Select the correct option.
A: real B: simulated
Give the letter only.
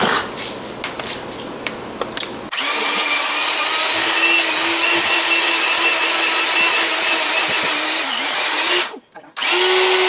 A